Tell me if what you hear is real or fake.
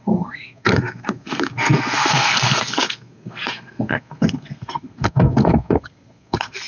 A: fake